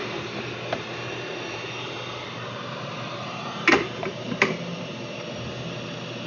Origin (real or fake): fake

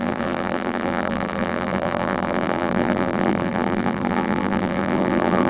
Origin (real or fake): fake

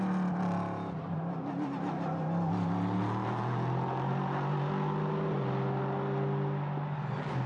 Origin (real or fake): real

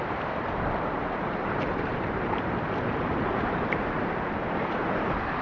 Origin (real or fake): fake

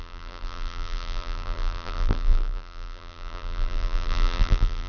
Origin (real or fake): fake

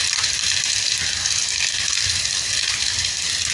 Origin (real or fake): fake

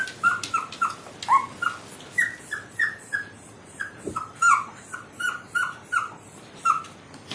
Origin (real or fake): real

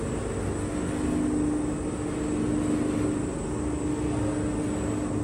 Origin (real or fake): real